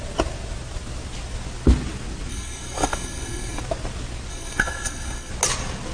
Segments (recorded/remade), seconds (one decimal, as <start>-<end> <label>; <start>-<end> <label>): 0.0-2.3 recorded; 2.3-3.6 remade; 3.6-4.3 recorded; 4.3-5.3 remade; 5.3-5.9 recorded